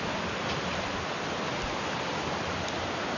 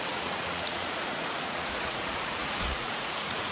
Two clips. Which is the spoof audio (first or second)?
second